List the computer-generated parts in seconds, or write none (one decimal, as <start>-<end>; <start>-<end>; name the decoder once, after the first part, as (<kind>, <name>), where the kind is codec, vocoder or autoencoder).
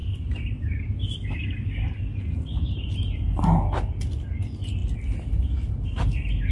none